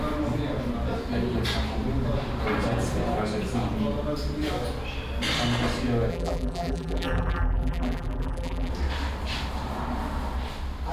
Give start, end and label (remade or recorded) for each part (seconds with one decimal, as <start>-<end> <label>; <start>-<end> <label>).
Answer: 0.0-6.1 recorded; 6.1-8.7 remade; 8.7-10.9 recorded